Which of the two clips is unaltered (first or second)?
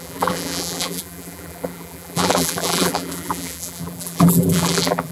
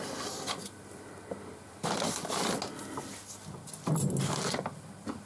second